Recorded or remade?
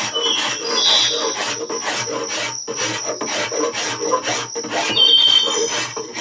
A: recorded